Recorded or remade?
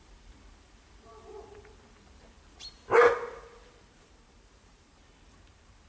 remade